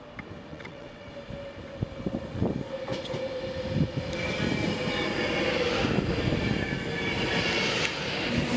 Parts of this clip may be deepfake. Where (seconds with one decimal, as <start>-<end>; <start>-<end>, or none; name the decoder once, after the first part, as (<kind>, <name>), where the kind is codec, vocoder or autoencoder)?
0.5-1.1 (vocoder, WaveNeXt)